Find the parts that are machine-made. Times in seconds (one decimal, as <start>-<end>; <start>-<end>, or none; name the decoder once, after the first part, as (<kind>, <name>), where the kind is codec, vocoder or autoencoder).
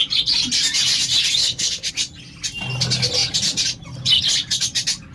1.4-1.9 (codec, HILCodec)